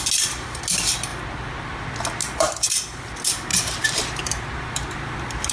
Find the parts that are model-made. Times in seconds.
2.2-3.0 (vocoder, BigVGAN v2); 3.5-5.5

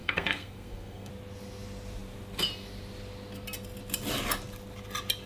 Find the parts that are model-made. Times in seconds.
0.0-1.1 (codec, SNAC)

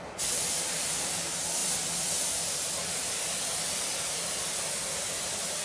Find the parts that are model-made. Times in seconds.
none